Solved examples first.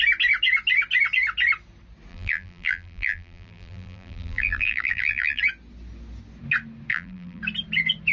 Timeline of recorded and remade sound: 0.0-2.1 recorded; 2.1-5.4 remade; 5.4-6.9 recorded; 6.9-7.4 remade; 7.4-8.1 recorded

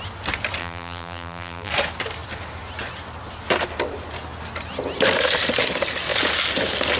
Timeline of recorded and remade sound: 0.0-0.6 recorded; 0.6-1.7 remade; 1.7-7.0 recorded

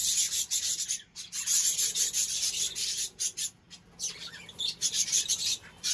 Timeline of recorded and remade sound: 0.0-5.9 remade

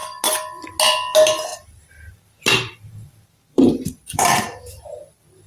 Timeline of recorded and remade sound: 0.0-1.5 recorded; 1.5-4.8 remade; 4.8-5.5 recorded

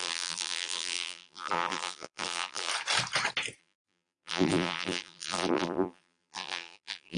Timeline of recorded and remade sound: 0.0-2.7 remade; 2.7-3.6 recorded; 3.6-7.2 remade

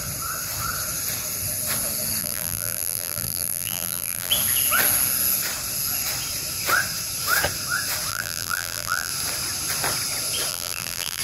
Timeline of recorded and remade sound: 0.0-2.2 recorded; 2.2-4.3 remade; 4.3-8.1 recorded; 8.1-9.1 remade; 9.1-10.5 recorded; 10.5-11.2 remade

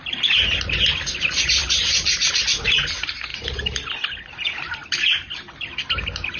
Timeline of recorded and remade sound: 0.0-1.6 recorded; 1.6-2.4 remade; 2.4-3.3 recorded; 3.3-3.9 remade; 3.9-6.4 recorded